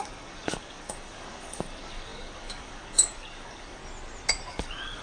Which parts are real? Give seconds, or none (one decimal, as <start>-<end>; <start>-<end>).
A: 3.8-4.5